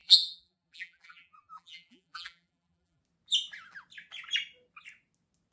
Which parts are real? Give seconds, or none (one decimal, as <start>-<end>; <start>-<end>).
3.0-5.5